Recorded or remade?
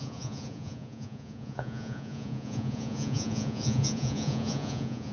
remade